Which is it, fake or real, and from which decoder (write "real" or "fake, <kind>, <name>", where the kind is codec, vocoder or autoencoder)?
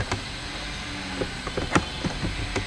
real